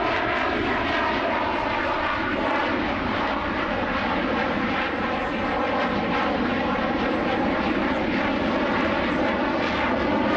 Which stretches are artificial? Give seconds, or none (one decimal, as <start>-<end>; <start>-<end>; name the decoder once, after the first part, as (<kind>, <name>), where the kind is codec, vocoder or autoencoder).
none